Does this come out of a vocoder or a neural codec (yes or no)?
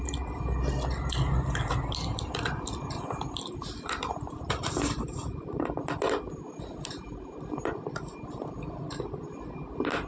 no